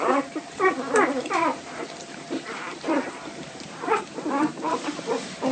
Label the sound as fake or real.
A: fake